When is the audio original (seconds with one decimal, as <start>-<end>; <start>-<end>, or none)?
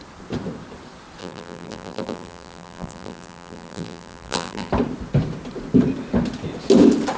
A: 0.0-1.2; 4.7-7.2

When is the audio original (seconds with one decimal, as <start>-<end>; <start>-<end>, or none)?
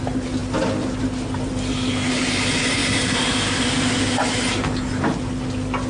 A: 0.0-2.8; 3.7-5.9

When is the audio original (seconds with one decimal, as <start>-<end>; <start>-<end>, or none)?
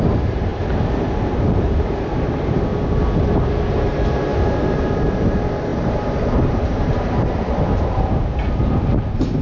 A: 2.7-3.7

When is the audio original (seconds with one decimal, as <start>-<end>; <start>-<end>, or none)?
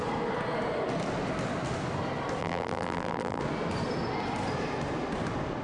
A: 0.0-2.4; 3.4-5.6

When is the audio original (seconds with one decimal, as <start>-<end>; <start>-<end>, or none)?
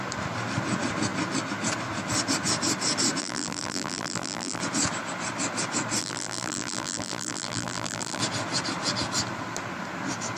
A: 0.0-3.2; 4.6-6.0; 8.2-10.4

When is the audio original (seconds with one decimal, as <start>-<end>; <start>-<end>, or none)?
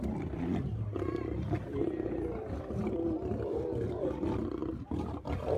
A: 0.0-5.6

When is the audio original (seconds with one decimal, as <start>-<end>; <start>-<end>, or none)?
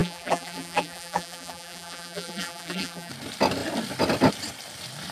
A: 3.1-5.1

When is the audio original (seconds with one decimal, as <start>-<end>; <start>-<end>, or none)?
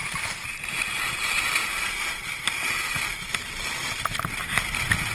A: 0.6-1.6; 2.4-5.1